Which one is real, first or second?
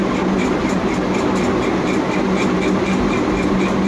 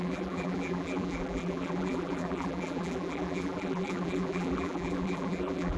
first